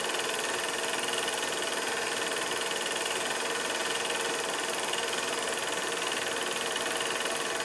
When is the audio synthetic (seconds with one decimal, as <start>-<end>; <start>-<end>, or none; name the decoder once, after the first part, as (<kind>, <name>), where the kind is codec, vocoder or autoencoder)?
none